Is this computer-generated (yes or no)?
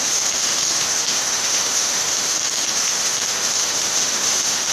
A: yes